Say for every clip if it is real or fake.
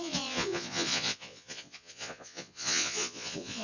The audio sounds fake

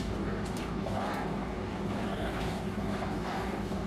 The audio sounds fake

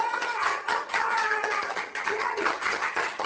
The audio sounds fake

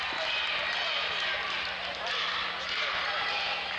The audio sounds real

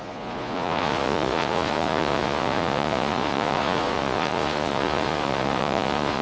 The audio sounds fake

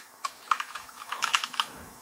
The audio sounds fake